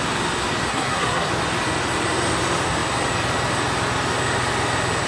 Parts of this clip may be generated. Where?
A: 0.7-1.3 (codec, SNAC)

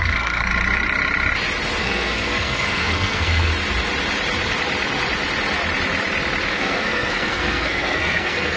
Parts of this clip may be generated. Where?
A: 0.0-0.5 (codec, SNAC); 1.8-3.5; 6.5-8.6